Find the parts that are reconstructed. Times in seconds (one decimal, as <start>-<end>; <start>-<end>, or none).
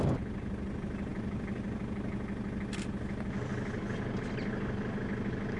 none